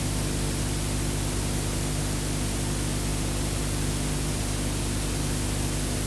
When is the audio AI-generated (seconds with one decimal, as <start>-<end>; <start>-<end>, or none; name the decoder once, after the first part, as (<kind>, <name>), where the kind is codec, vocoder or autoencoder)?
none